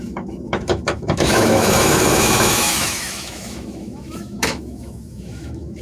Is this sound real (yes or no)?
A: no